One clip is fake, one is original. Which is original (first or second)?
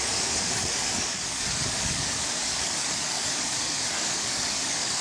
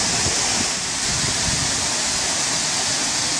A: second